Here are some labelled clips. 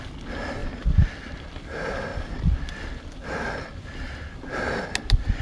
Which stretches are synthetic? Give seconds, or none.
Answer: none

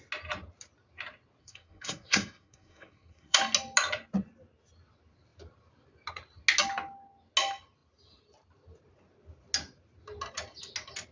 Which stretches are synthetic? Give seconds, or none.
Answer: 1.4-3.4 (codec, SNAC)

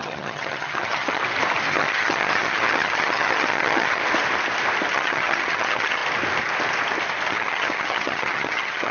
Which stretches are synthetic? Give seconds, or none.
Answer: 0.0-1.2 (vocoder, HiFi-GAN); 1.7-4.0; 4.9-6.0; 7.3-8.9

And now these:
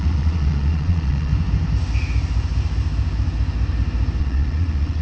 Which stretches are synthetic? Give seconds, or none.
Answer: 0.0-1.3 (vocoder, Vocos); 4.2-5.0

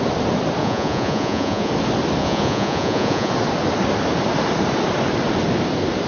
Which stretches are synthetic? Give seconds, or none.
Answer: 0.6-1.7 (vocoder, Vocos); 2.2-3.3

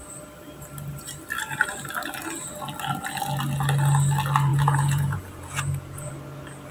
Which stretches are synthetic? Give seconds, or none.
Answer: 4.5-6.1 (vocoder, Vocos)

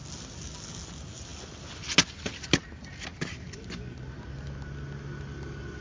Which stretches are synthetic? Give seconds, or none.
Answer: none

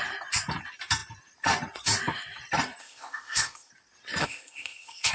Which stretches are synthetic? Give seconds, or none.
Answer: 2.8-3.7 (codec, ZipCodec); 4.2-5.1